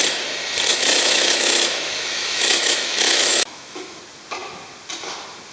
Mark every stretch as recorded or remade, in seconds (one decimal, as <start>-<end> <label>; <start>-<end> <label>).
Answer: 0.0-0.7 recorded; 0.7-4.0 remade; 4.0-5.5 recorded